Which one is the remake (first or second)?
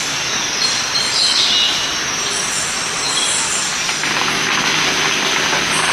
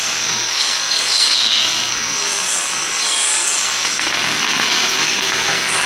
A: second